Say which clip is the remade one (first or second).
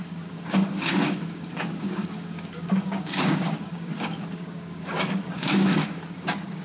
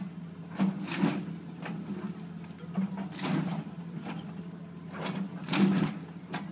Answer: first